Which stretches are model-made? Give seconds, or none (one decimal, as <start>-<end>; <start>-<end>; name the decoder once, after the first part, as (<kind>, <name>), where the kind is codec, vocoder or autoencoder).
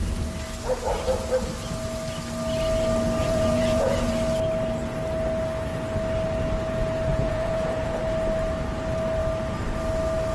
3.2-4.1 (vocoder, Vocos); 7.1-8.0